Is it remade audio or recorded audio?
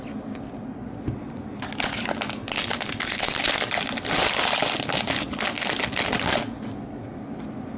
recorded